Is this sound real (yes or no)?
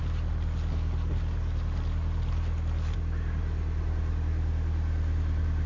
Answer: yes